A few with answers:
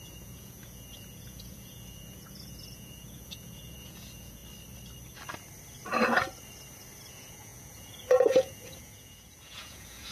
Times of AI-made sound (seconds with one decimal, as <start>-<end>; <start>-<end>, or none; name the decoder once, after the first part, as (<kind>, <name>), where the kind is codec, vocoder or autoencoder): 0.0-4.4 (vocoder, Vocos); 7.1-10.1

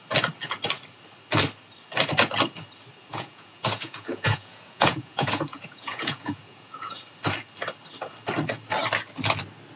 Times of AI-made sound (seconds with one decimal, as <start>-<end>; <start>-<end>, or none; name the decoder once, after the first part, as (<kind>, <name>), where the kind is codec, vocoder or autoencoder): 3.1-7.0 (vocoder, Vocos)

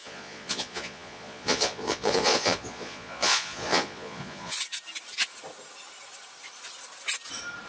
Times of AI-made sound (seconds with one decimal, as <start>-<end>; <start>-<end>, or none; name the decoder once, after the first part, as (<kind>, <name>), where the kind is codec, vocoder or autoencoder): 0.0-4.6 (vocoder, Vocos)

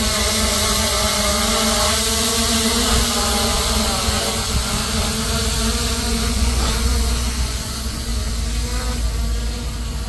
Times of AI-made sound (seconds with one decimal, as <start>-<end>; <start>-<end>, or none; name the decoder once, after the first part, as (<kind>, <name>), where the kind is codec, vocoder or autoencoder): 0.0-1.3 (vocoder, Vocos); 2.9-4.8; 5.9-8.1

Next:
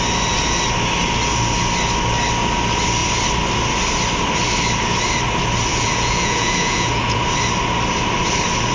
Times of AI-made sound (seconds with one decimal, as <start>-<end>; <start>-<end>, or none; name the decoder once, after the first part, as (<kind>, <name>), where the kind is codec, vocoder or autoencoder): 5.7-7.2 (vocoder, Vocos)

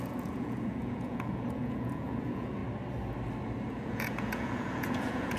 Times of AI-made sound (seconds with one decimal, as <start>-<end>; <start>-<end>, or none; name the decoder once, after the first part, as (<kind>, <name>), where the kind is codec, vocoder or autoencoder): 0.0-2.6 (vocoder, Vocos); 3.7-5.4